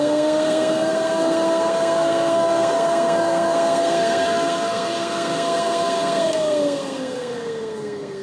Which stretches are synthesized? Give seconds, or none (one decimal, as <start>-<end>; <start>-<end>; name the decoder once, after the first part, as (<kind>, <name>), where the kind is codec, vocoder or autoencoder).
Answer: 0.0-8.2 (codec, SNAC)